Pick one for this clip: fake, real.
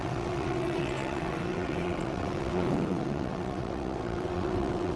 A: fake